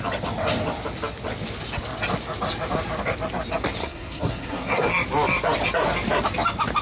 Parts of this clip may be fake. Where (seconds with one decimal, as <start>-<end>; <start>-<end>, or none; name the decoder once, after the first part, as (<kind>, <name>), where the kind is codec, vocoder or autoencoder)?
3.8-4.9 (codec, SNAC)